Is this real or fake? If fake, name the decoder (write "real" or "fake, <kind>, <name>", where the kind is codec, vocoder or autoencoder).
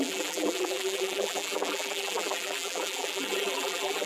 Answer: fake, vocoder, BigVGAN v2